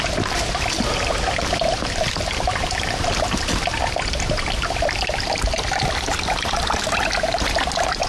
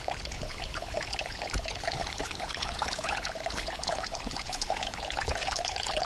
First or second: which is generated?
second